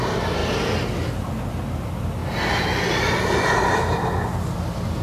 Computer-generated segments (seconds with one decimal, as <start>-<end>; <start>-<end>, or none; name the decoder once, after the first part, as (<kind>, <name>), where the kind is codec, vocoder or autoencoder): none